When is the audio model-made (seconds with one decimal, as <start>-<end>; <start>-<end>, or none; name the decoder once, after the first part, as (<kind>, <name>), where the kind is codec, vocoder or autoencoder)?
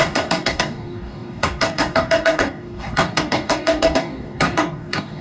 0.0-5.2 (codec, DAC)